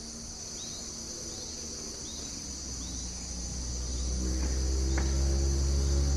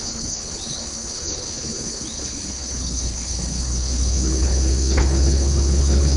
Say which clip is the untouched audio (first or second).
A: first